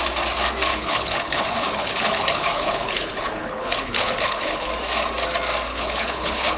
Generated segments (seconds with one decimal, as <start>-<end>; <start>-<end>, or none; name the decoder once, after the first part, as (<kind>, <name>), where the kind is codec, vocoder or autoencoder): 0.7-4.7 (codec, HILCodec); 5.7-6.6